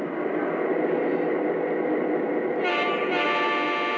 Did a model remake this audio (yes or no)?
no